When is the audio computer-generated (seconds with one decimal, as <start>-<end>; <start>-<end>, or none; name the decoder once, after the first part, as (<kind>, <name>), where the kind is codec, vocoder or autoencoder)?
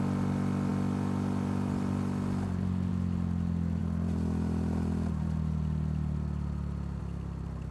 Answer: none